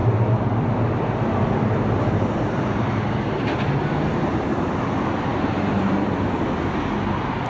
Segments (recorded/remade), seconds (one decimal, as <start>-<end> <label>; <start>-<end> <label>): 0.0-4.5 remade; 4.5-7.5 recorded